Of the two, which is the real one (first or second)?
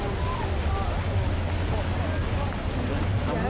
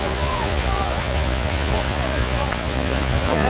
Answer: first